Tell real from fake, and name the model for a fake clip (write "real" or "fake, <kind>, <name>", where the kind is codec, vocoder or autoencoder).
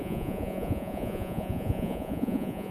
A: fake, vocoder, Vocos